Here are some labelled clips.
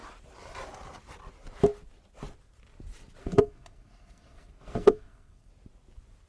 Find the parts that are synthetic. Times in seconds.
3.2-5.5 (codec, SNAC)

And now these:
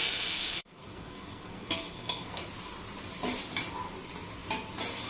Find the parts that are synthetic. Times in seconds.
0.0-2.4 (codec, SNAC)

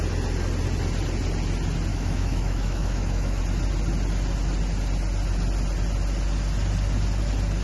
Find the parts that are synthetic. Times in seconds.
1.9-3.4 (autoencoder, DAC-VAE)

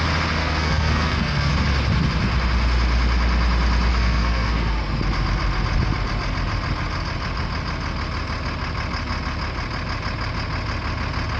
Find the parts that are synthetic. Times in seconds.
0.4-1.5 (codec, SNAC); 3.9-4.7

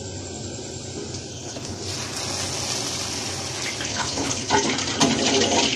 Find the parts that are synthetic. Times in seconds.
1.3-1.8 (codec, HILCodec); 3.9-4.5

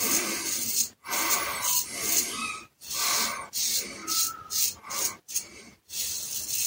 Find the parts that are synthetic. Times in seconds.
none